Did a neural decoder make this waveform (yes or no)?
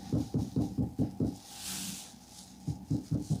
no